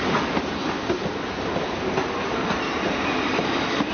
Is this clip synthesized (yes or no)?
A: no